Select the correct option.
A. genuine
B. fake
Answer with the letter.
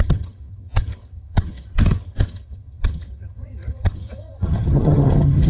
B